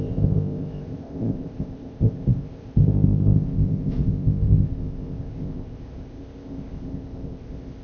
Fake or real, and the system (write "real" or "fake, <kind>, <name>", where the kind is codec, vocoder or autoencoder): fake, codec, ZipCodec